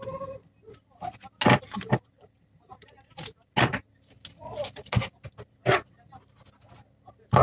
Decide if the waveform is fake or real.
real